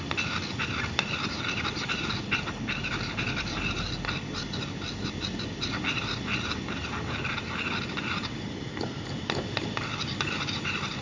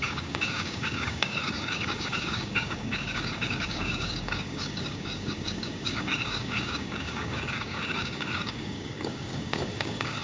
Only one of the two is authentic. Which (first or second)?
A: first